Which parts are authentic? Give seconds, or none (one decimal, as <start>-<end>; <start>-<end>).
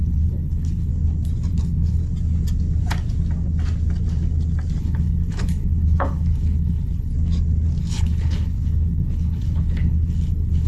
0.9-1.5; 2.0-4.8; 7.1-7.8